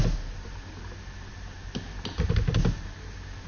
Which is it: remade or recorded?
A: recorded